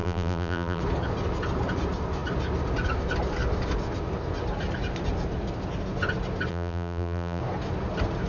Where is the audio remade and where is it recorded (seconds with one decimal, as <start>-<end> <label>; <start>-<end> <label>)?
0.0-0.8 remade; 0.8-6.5 recorded; 6.5-7.4 remade; 7.4-8.3 recorded